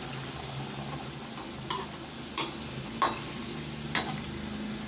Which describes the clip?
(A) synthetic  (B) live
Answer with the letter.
B